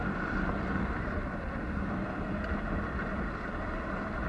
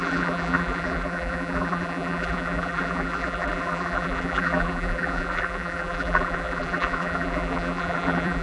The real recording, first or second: first